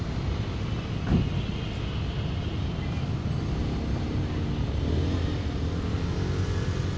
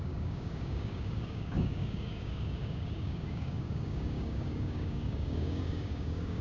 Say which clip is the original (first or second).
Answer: first